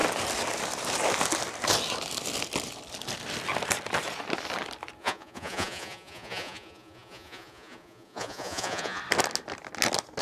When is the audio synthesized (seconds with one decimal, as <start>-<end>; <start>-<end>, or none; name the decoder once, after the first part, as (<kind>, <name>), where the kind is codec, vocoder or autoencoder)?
5.0-9.0 (vocoder, Vocos)